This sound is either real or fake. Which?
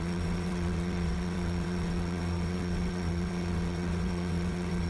fake